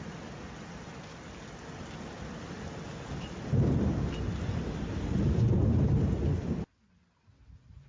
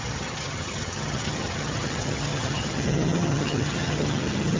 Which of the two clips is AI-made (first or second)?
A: second